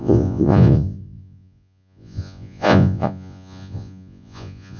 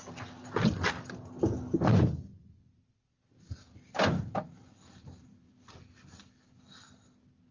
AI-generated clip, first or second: first